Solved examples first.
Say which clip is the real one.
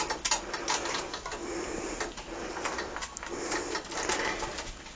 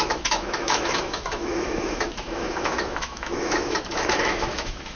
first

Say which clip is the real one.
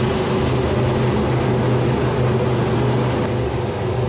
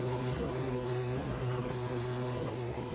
first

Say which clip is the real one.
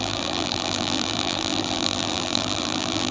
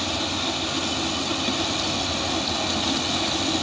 second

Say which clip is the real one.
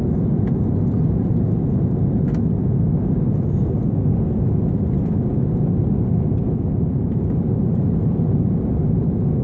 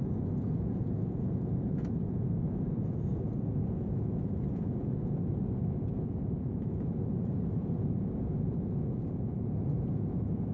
first